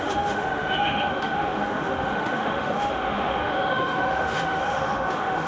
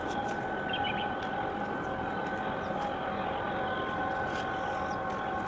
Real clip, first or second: second